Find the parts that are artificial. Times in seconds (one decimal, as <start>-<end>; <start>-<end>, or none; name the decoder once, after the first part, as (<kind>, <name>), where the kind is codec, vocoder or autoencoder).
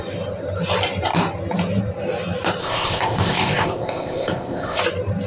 2.6-4.8 (codec, ZipCodec)